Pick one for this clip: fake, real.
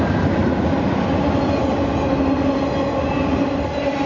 real